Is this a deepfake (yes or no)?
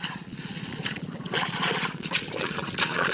yes